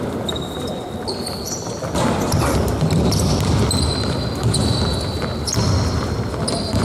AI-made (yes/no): no